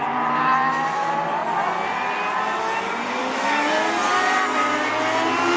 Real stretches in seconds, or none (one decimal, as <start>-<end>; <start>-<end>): 0.0-3.2; 3.7-5.6